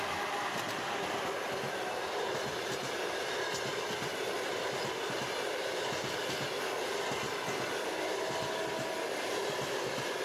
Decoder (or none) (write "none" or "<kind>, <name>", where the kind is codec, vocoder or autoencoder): none